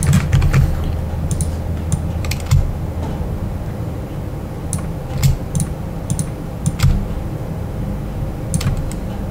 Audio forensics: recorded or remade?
recorded